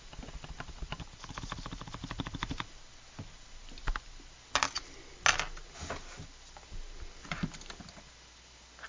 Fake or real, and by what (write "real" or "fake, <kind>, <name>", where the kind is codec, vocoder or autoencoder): real